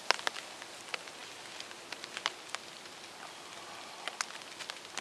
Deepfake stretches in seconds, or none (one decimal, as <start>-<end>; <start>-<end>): none